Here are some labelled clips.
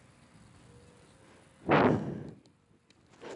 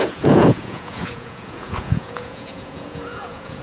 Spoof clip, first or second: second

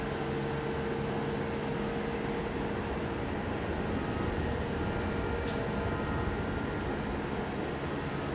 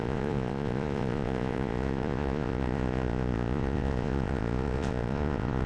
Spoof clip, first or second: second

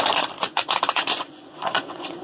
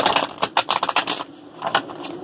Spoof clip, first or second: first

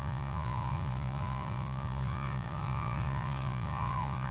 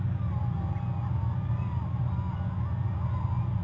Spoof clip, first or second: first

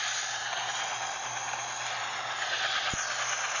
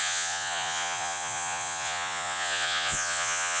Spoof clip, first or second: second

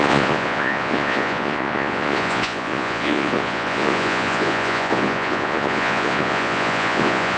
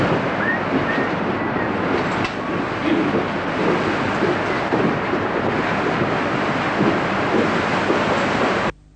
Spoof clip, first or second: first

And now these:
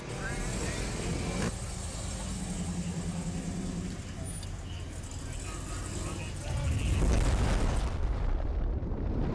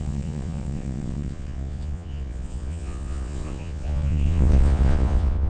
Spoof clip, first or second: second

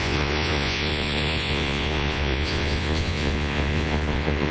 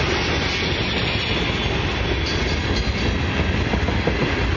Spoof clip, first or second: first